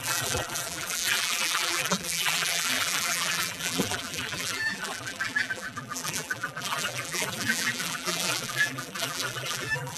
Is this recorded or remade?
remade